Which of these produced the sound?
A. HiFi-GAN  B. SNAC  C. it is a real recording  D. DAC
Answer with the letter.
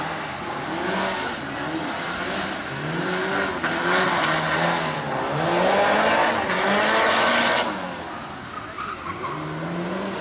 C